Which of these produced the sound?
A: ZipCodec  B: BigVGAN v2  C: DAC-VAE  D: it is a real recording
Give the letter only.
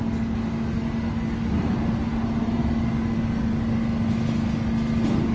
D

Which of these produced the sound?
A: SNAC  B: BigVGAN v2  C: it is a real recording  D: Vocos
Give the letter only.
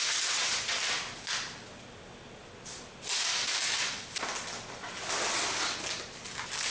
C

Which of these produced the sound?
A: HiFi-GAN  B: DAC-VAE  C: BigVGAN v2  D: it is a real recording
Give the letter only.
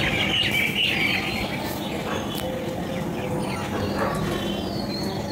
D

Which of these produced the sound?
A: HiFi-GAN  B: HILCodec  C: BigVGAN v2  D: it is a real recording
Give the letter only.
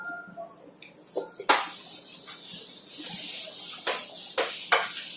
D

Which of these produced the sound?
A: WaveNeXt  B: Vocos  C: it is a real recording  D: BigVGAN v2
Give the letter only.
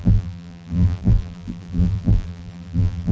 D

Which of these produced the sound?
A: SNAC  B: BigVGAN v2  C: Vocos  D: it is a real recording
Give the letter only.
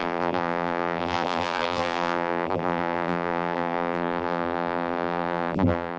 B